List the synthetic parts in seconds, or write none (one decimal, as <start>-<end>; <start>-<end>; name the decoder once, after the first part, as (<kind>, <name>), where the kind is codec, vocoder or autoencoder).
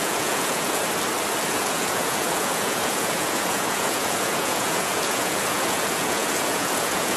0.0-0.8 (vocoder, Vocos); 1.5-7.2